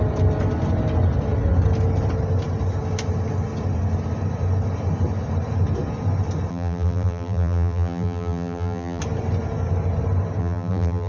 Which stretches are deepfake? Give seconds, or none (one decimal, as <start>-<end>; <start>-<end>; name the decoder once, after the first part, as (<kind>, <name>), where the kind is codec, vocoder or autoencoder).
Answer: 6.5-9.0 (vocoder, BigVGAN v2); 10.4-11.1